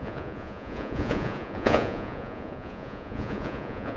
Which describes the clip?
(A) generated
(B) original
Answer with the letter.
A